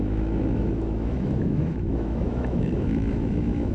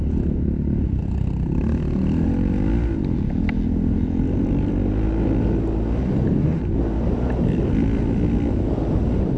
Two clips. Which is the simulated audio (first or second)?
first